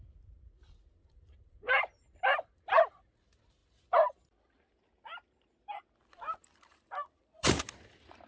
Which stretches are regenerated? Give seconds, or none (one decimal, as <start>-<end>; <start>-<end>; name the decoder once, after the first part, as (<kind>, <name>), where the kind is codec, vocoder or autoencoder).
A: 1.0-3.0 (vocoder, BigVGAN v2); 6.7-7.6